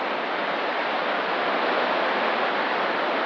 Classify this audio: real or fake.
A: real